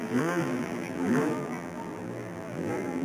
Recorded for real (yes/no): no